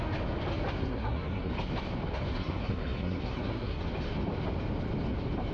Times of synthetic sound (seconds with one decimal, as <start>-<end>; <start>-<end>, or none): 0.8-1.5; 2.3-3.8